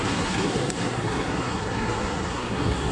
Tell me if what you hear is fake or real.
fake